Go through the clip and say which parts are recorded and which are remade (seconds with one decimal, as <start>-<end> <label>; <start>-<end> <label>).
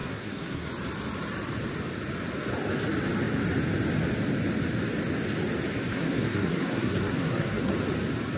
0.0-0.7 remade; 0.7-5.9 recorded; 5.9-7.7 remade; 7.7-8.4 recorded